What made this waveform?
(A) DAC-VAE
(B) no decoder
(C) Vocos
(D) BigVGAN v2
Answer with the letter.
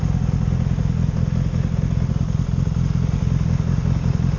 B